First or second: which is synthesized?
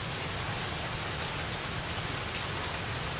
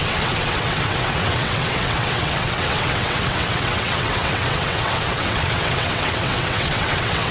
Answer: second